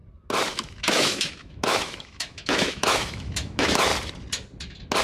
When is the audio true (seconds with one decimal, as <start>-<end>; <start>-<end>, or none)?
0.0-0.5; 3.9-5.0